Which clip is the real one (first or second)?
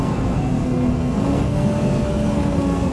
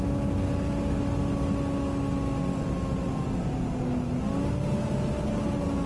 second